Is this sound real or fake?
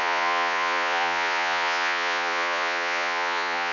fake